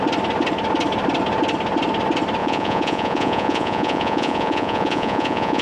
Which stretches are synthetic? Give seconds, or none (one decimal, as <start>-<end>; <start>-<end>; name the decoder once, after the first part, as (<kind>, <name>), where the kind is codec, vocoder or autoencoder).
2.4-5.6 (vocoder, Vocos)